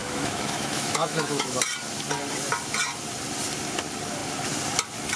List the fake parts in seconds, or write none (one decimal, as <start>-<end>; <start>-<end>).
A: 0.0-1.6